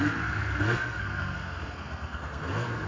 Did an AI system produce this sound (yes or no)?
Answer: yes